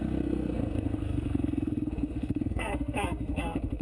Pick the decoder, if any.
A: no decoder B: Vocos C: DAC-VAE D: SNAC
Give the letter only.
D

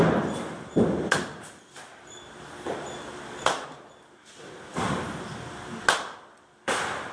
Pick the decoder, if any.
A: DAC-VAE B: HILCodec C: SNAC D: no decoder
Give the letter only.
D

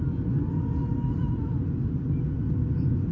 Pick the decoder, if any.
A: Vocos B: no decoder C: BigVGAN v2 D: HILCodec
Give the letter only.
B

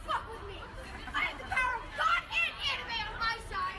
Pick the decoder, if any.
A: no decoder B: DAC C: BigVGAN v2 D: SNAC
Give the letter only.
A